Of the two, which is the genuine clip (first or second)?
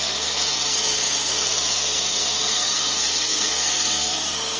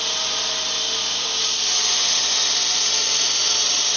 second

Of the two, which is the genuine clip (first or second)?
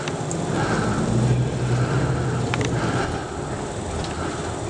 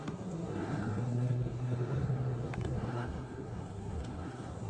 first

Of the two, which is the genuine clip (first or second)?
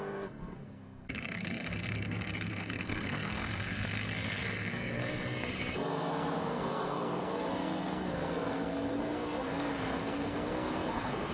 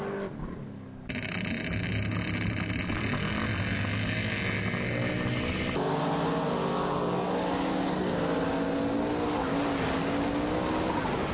second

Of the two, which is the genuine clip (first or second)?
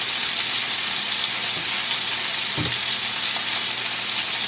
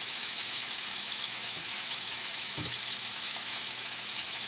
first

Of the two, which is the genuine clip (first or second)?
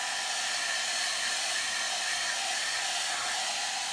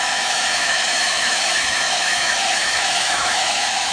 first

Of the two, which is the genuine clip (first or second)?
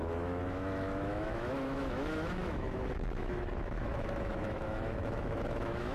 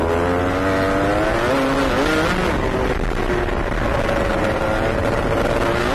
second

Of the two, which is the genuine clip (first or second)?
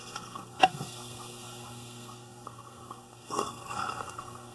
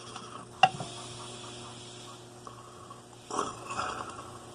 second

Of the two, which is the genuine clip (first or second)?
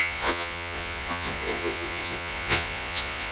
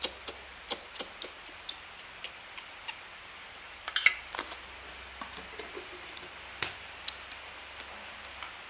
second